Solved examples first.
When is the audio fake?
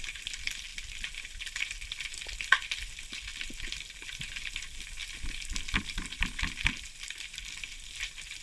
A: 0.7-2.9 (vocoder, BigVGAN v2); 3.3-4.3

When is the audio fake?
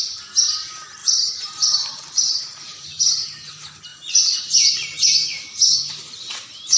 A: 1.0-3.0 (vocoder, BigVGAN v2); 3.9-5.9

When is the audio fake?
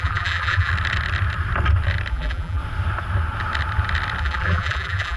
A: 0.0-0.7 (vocoder, BigVGAN v2); 2.1-2.6; 4.2-5.2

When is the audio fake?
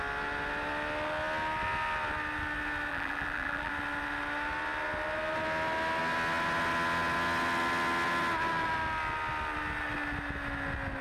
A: 2.9-3.7 (vocoder, BigVGAN v2)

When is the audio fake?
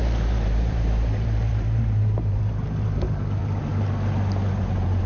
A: 0.0-3.4 (vocoder, BigVGAN v2); 4.6-5.1